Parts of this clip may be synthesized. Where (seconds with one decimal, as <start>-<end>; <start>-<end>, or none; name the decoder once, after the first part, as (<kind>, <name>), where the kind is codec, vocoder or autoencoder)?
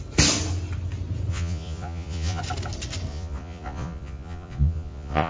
1.3-2.4 (vocoder, Vocos); 3.1-5.3